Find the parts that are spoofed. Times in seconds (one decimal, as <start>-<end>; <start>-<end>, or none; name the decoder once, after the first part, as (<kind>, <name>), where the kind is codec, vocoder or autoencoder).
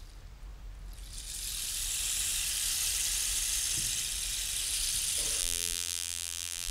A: 5.4-6.7 (vocoder, BigVGAN v2)